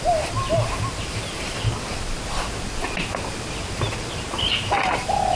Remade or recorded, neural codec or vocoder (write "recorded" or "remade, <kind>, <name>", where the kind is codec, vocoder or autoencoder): recorded